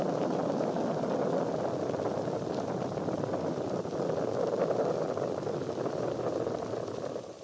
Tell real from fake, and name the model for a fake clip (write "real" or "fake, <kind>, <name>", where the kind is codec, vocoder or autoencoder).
real